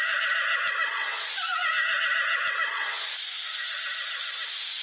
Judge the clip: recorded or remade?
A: recorded